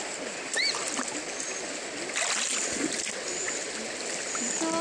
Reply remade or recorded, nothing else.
recorded